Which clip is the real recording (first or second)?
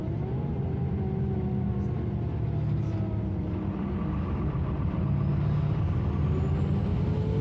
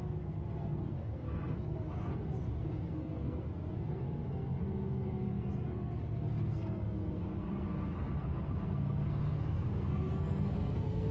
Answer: first